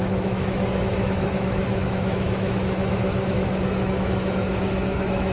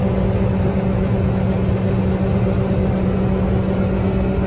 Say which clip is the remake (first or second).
first